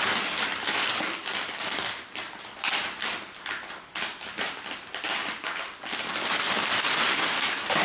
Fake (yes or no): no